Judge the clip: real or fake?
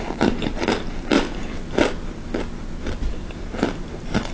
real